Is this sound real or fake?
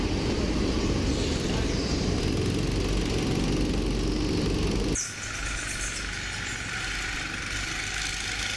real